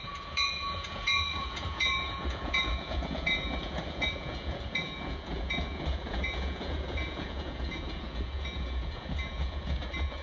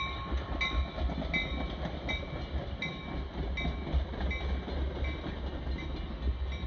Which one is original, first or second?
second